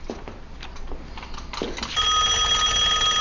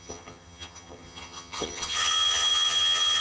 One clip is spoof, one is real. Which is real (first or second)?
first